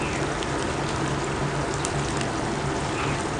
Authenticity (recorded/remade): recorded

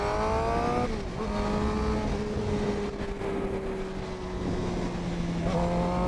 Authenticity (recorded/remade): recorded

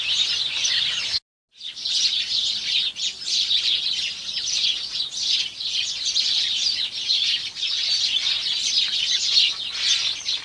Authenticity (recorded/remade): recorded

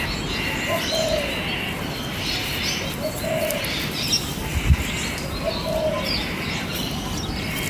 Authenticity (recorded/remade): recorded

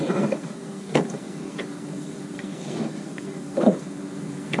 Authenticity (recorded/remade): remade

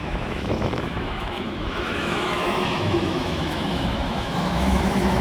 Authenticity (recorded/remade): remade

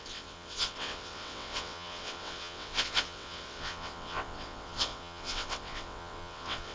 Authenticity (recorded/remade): remade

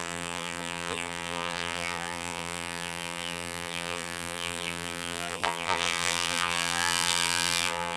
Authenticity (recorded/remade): remade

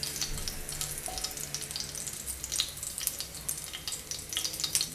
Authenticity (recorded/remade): recorded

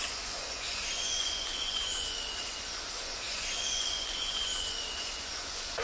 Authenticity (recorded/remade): remade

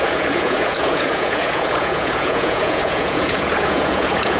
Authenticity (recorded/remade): remade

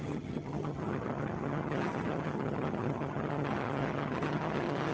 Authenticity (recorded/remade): remade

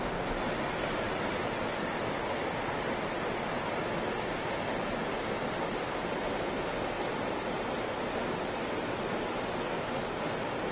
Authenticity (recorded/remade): recorded